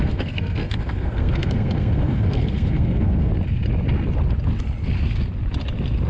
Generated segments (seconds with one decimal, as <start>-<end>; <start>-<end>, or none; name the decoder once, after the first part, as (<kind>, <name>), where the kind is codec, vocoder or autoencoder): 0.0-3.3 (codec, SNAC)